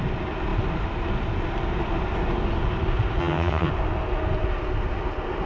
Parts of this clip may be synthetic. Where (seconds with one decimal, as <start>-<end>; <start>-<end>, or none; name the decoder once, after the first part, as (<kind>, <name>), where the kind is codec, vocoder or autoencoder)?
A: 3.2-3.7 (vocoder, HiFi-GAN)